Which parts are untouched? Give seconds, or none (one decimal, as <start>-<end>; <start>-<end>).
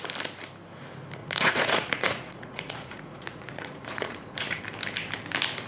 0.0-1.2; 4.6-5.7